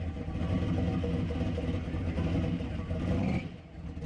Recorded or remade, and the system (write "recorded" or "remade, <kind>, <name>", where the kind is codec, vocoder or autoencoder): recorded